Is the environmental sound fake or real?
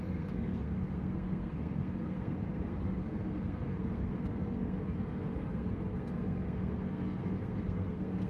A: fake